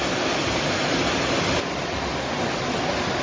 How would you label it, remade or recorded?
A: recorded